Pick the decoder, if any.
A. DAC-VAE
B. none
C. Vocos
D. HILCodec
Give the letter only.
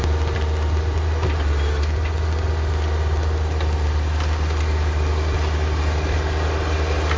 B